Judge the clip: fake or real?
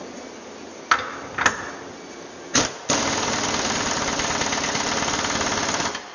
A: real